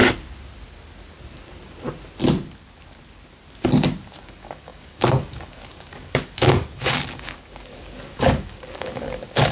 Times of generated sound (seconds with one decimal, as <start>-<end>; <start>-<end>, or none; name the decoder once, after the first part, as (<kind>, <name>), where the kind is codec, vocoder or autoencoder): 4.2-9.5 (codec, DAC)